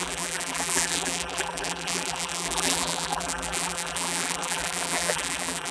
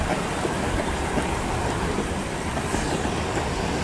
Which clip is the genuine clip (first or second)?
second